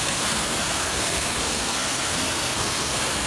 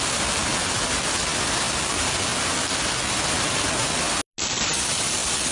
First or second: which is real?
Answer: second